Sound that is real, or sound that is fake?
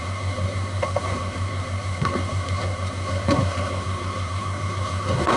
fake